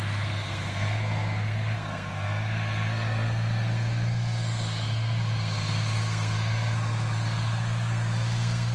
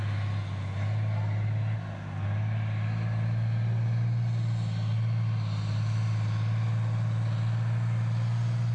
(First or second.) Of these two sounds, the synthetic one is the first